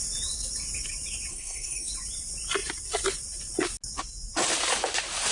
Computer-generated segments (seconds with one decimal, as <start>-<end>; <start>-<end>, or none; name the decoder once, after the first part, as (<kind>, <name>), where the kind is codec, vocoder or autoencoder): 1.3-1.9 (codec, SNAC)